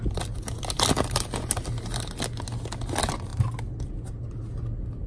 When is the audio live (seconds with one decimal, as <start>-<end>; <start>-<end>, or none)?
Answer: 0.0-5.1